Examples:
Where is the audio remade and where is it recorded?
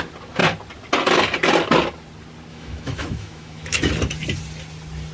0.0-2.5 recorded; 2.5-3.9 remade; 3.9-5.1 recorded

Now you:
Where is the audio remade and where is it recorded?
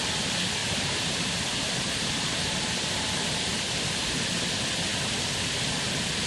0.0-0.6 recorded; 0.6-4.4 remade; 4.4-6.3 recorded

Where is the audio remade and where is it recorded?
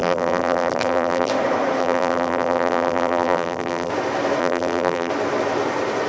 0.0-1.3 remade; 1.3-1.8 recorded; 1.8-3.9 remade; 3.9-4.4 recorded; 4.4-5.1 remade; 5.1-6.1 recorded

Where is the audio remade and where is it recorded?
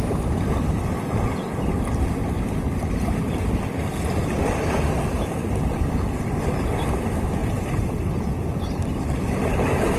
0.0-7.4 recorded; 7.4-8.3 remade; 8.3-10.0 recorded